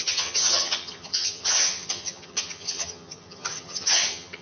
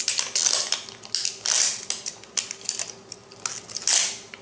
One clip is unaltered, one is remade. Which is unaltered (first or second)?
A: second